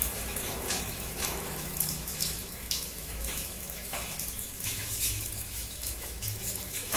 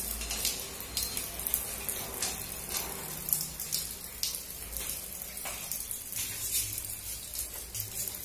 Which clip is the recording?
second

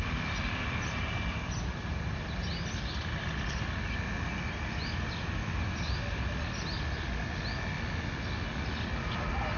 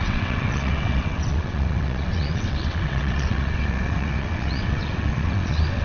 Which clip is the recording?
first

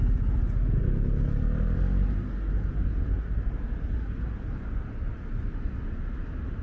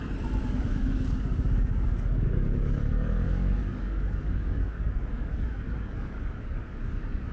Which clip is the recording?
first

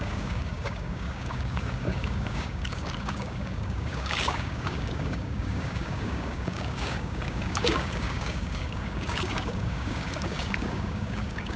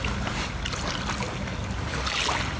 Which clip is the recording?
second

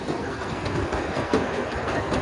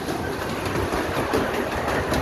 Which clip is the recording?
second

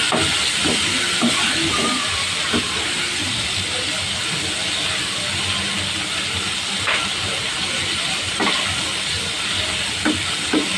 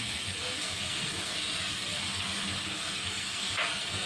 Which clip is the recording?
first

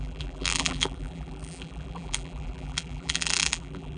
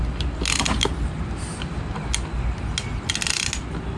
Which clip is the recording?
second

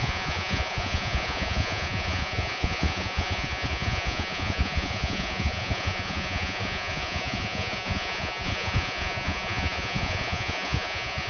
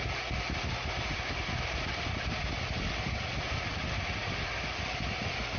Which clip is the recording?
second